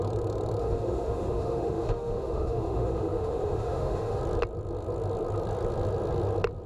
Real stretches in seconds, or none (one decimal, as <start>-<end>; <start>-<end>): 0.0-0.6; 4.2-6.7